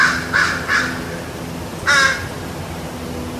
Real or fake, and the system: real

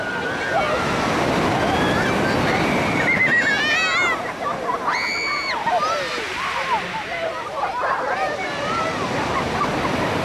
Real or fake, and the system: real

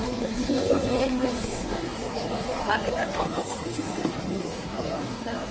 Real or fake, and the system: fake, codec, SNAC